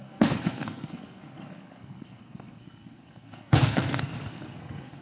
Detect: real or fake fake